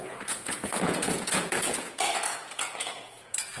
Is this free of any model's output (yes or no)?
no